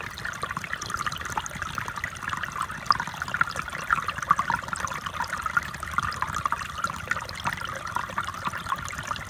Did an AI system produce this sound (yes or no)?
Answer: no